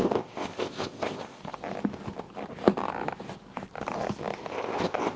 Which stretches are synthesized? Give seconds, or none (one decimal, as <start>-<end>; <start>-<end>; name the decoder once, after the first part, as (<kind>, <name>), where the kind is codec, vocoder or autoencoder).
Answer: 0.0-1.4 (codec, ZipCodec); 4.5-5.2